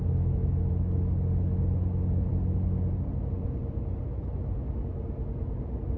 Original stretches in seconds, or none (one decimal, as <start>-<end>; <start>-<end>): 0.0-6.0